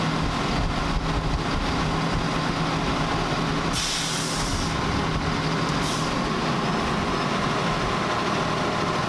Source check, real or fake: real